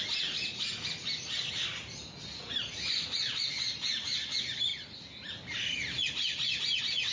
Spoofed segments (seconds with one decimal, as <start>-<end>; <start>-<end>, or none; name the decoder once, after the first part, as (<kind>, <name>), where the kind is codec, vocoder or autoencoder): none